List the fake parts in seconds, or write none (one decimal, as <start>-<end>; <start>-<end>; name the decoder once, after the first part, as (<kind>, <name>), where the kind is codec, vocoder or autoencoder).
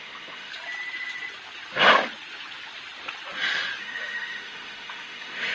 0.0-0.5 (autoencoder, DAC-VAE); 3.8-5.5